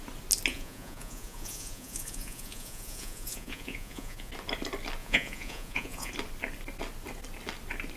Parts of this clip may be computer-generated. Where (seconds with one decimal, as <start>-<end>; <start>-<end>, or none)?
0.5-4.3; 5.0-6.1